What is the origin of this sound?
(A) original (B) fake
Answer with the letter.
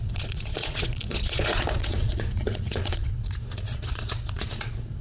B